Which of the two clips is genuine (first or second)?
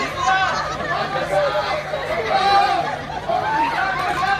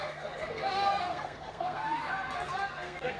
first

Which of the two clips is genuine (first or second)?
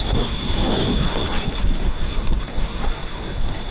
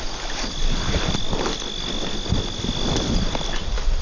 second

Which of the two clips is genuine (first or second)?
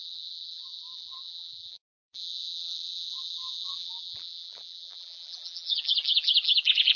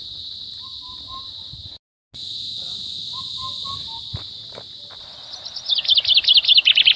second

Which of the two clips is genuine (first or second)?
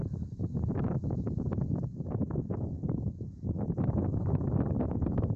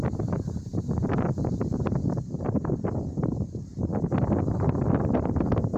second